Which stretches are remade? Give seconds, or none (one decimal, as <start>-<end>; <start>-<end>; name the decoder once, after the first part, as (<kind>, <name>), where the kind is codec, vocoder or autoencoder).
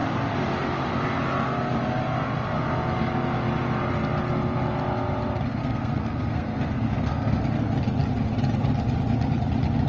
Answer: 5.6-7.4 (codec, SNAC)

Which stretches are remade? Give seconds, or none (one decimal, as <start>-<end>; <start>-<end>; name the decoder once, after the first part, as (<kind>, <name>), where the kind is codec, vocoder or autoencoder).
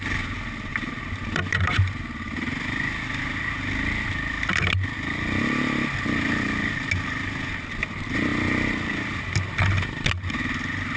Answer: 0.7-2.0 (vocoder, BigVGAN v2); 8.3-9.2